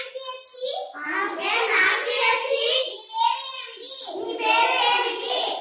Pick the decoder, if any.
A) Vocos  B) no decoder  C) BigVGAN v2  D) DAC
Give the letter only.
B